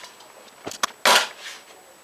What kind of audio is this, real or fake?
real